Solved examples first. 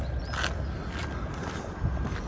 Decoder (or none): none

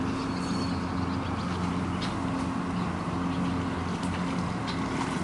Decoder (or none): none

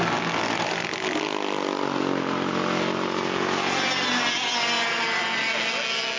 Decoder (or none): none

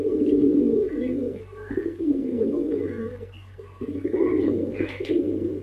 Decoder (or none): codec, SNAC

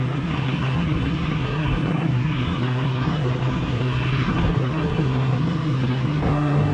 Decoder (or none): codec, SNAC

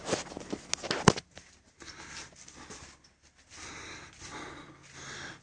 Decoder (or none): none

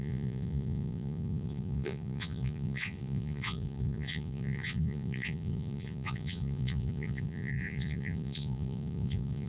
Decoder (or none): vocoder, Vocos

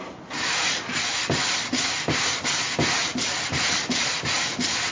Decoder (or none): none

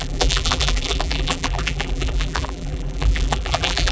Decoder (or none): vocoder, BigVGAN v2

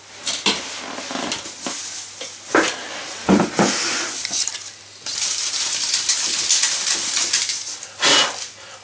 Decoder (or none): none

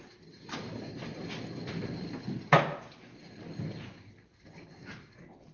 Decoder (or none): none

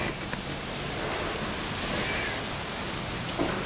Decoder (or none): none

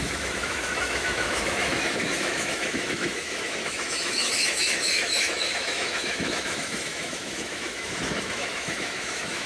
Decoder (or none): autoencoder, DAC-VAE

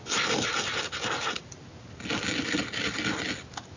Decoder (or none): none